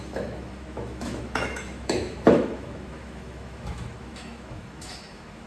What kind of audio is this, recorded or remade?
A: remade